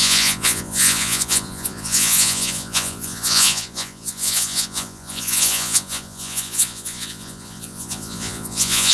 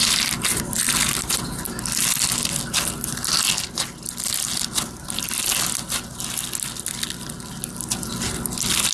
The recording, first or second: second